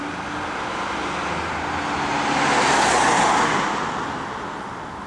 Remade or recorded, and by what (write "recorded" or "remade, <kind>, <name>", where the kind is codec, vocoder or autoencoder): recorded